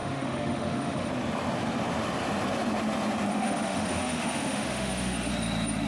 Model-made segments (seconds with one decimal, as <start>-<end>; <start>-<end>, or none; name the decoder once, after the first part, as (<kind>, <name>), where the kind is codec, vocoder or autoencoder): 0.0-1.1 (autoencoder, DAC-VAE); 3.3-5.3